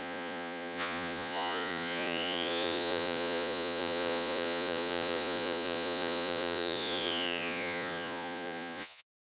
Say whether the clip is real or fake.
fake